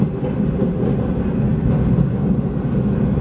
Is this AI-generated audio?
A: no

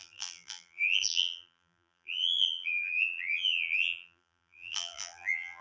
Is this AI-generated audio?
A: yes